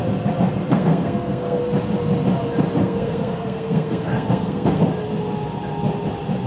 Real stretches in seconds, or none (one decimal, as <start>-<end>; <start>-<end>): 0.0-0.7; 1.6-2.8; 4.8-6.5